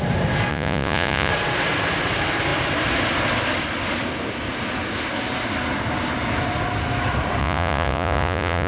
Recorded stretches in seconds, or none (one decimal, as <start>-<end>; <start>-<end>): 0.0-0.5; 1.3-7.4